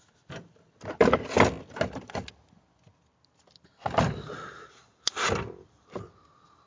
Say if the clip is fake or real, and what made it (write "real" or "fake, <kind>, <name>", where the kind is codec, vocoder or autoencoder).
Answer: real